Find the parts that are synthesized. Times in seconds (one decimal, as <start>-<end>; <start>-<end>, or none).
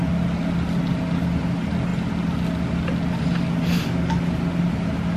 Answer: none